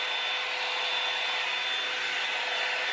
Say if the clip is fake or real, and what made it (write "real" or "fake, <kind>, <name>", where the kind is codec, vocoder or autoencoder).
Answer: real